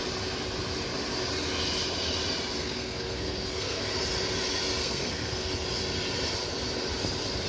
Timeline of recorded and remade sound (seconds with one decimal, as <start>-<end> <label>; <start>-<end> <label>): 0.0-2.6 recorded; 2.6-3.8 remade; 3.8-4.8 recorded; 4.8-5.5 remade; 5.5-7.5 recorded